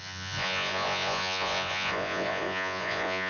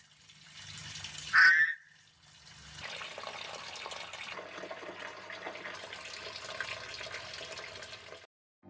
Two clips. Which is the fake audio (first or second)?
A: first